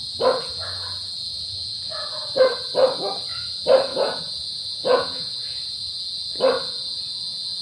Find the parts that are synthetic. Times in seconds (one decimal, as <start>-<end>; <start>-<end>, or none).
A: 1.3-1.8; 3.9-5.8